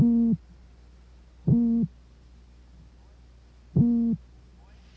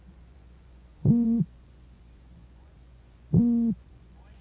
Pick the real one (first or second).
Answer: first